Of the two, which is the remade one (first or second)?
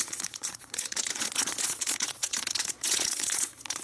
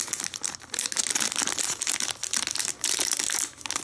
first